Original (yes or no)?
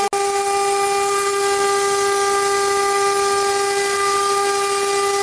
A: yes